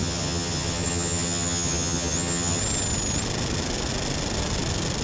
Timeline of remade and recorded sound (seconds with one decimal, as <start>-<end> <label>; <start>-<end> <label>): 0.0-2.6 remade; 2.6-5.0 recorded